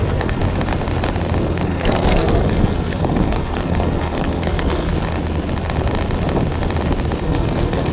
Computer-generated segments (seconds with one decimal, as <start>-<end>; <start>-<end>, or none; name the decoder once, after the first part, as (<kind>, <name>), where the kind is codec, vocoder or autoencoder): 0.0-0.4 (codec, SNAC); 1.4-4.9; 7.2-7.9